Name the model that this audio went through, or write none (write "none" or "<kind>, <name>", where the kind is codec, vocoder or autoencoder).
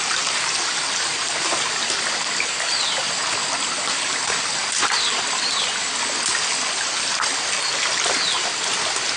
none